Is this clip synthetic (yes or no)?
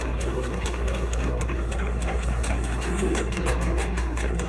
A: yes